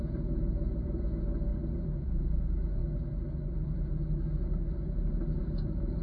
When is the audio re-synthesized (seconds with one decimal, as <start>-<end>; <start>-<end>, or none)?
0.0-1.5; 2.0-2.8; 5.4-6.0